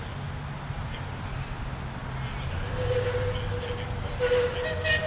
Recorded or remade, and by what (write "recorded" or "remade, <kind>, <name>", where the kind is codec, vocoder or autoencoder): recorded